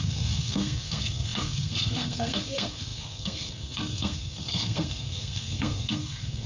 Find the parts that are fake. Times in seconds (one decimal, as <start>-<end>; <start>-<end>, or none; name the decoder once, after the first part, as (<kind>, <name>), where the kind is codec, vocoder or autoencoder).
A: 0.0-6.5 (codec, SNAC)

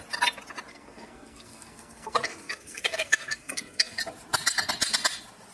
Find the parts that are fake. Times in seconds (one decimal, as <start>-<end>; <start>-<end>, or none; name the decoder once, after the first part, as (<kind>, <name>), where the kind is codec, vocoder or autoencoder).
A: 0.7-4.0 (codec, SNAC)